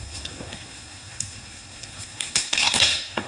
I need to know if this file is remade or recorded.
remade